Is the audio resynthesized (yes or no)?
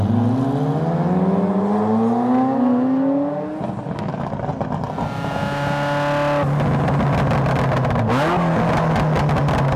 no